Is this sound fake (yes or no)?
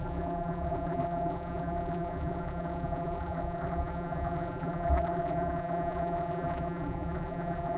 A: yes